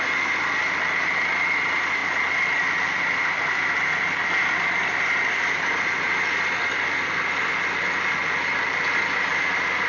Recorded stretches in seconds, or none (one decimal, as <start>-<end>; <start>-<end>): 0.0-9.9